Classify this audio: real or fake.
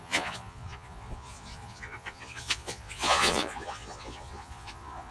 fake